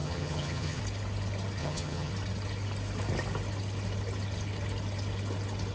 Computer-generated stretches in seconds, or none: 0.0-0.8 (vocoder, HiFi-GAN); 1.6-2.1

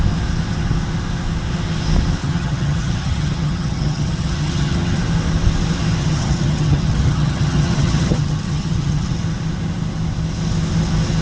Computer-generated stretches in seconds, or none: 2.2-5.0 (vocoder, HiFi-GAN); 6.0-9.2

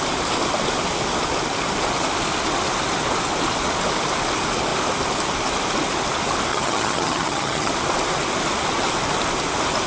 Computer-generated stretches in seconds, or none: 6.5-7.7 (vocoder, HiFi-GAN)

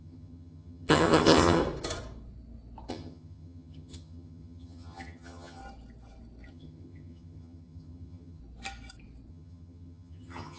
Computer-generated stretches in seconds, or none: 0.0-1.6 (vocoder, HiFi-GAN); 2.9-5.6; 6.5-8.4; 9.3-10.6

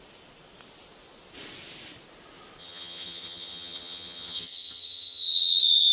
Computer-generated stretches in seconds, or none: 2.6-5.9 (vocoder, HiFi-GAN)